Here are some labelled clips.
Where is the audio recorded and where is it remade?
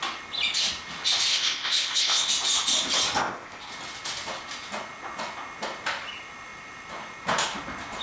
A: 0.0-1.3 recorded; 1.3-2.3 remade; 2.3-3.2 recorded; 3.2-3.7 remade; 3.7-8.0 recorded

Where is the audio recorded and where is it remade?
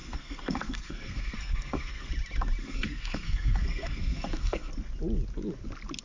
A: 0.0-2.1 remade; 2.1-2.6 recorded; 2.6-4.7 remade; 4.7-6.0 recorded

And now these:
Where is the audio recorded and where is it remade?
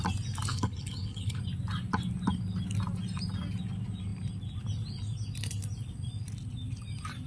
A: 0.0-0.5 recorded; 0.5-1.4 remade; 1.4-7.3 recorded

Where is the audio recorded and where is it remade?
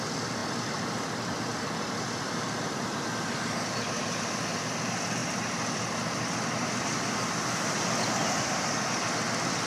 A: 0.0-9.7 recorded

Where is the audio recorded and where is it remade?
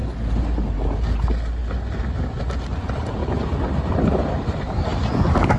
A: 0.0-5.6 recorded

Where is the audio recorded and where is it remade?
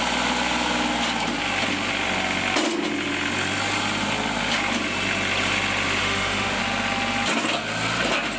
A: 0.0-6.0 recorded; 6.0-6.6 remade; 6.6-8.4 recorded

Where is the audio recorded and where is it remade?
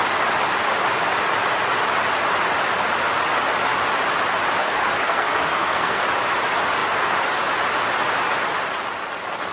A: 0.0-4.6 recorded; 4.6-6.0 remade; 6.0-9.5 recorded